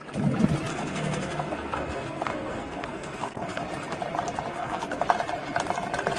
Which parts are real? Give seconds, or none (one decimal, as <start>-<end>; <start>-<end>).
0.0-0.7; 3.6-4.5; 5.0-6.2